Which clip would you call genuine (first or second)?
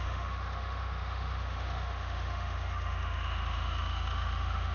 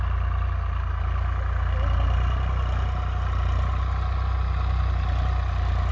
second